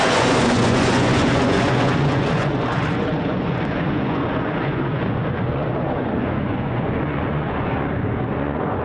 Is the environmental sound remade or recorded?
remade